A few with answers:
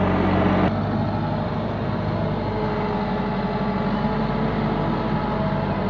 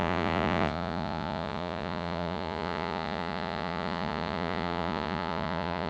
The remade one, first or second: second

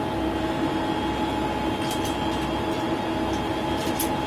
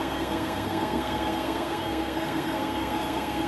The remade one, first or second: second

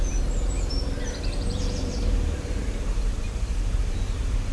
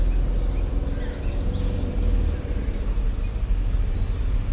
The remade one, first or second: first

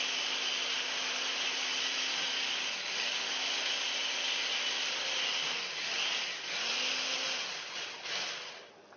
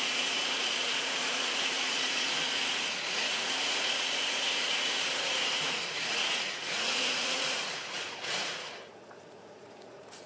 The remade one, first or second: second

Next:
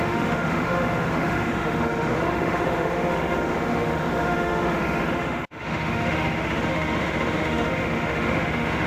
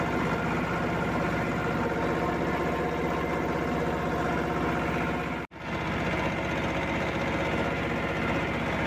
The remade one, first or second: first